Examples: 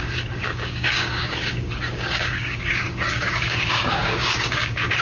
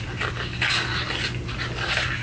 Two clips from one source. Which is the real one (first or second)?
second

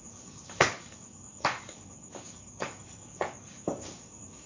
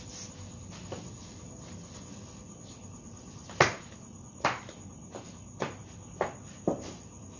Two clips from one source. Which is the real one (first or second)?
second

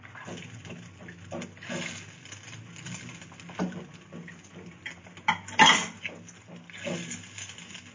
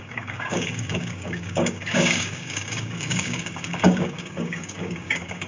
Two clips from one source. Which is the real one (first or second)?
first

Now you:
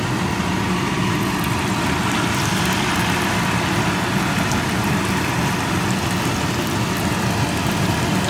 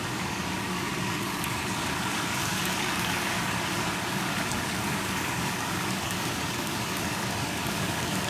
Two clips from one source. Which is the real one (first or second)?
first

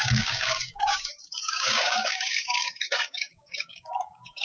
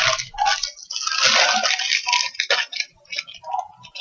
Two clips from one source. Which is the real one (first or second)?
second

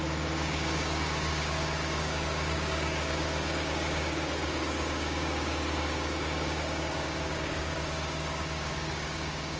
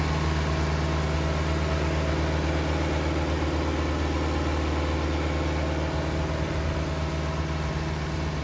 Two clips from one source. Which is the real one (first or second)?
second